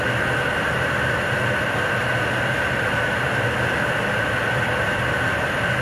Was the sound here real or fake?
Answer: real